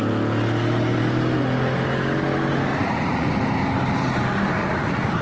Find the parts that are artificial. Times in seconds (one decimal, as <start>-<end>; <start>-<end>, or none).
2.7-3.3; 4.6-5.2

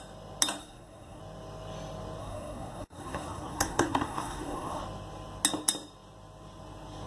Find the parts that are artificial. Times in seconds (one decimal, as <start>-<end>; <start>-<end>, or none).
0.6-1.2; 2.2-4.8

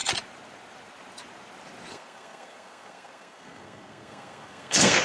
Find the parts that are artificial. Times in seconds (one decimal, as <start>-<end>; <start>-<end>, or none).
1.9-5.0

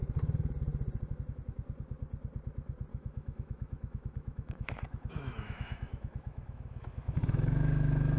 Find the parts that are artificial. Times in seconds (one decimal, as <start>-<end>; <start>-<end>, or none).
2.9-8.2

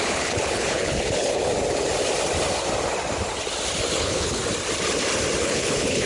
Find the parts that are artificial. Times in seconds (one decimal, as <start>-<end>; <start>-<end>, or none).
0.0-1.5; 4.0-4.4; 5.4-6.1

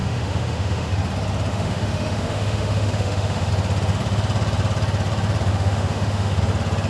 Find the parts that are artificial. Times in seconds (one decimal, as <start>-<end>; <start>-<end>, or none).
0.0-0.9; 1.5-3.5; 5.5-6.4

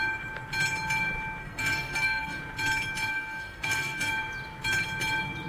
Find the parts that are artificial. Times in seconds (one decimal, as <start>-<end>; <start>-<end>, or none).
1.4-2.4; 3.1-4.1

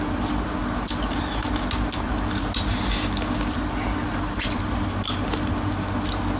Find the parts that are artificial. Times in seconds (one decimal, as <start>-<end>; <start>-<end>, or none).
none